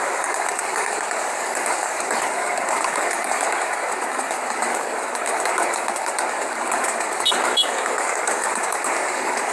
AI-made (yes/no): yes